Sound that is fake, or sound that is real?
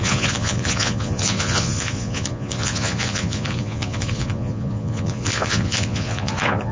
fake